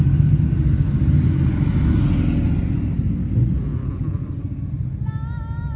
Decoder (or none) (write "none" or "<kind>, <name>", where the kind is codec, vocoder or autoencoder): none